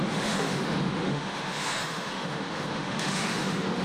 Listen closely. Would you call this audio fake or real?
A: fake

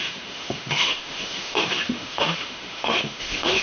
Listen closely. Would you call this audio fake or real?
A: fake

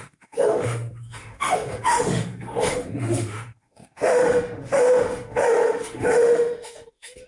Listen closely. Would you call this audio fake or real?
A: fake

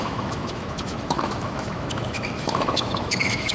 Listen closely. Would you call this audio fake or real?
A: fake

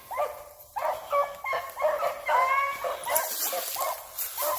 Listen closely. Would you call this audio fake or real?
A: real